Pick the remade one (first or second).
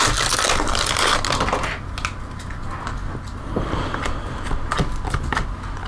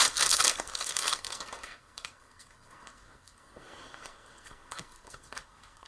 second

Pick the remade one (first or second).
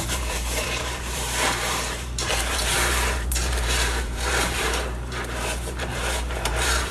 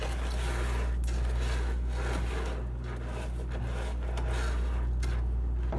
first